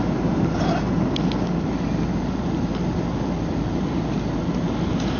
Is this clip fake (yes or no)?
no